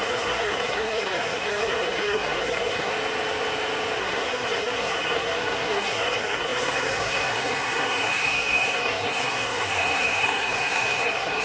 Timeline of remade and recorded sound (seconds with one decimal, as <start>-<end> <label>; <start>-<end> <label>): 0.0-2.9 remade; 2.9-4.0 recorded; 4.0-11.4 remade